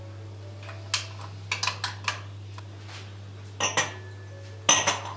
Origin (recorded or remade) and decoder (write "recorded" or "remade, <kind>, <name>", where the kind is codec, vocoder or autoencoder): recorded